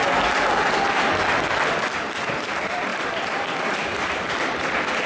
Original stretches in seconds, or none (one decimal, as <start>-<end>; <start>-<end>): 0.0-1.6

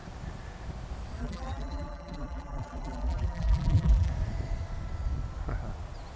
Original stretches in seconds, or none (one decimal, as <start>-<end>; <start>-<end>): 0.0-1.2; 4.1-6.2

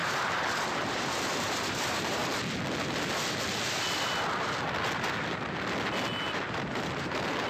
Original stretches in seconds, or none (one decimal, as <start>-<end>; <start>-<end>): 2.2-6.7

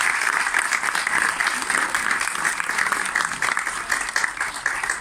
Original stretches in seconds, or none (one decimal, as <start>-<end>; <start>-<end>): 0.0-5.0

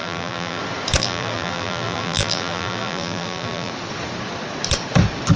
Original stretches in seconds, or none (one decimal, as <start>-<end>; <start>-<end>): 0.6-1.0; 3.7-5.4

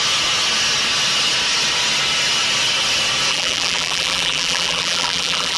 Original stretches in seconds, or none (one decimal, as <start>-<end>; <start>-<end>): 0.0-3.3

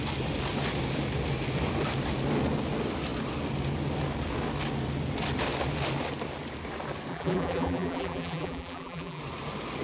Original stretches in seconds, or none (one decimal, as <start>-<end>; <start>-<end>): 0.0-7.1; 9.2-9.8